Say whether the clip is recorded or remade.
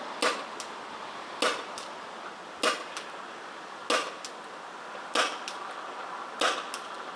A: recorded